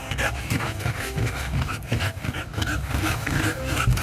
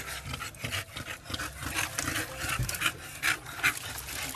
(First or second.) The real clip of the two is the second